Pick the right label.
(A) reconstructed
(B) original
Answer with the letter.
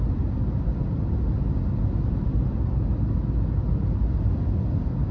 B